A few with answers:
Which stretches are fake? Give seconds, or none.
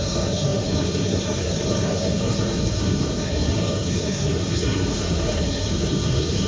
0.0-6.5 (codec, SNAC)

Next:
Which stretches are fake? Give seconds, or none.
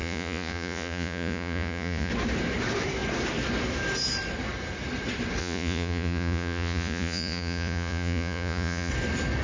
0.0-2.1 (vocoder, Vocos); 5.4-8.9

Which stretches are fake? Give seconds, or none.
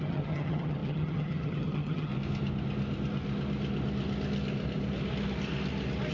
0.0-2.1 (vocoder, HiFi-GAN)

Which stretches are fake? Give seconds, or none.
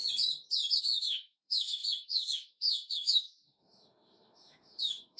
0.8-5.2 (autoencoder, DAC-VAE)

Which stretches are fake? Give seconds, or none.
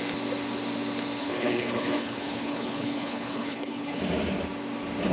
1.2-4.0 (codec, HILCodec)